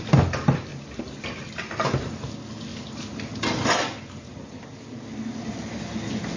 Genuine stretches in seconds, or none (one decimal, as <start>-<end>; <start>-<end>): 0.0-6.4